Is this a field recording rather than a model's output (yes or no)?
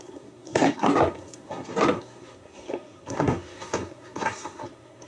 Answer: no